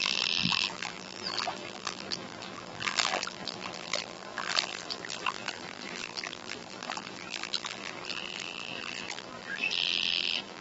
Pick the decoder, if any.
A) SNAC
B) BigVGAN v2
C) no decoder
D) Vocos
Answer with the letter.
B